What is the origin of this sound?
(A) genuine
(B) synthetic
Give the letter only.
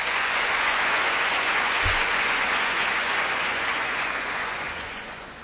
B